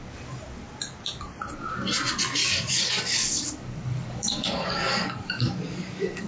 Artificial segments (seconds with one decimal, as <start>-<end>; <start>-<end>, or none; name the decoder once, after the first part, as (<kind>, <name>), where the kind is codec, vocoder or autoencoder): 2.4-6.3 (codec, DAC)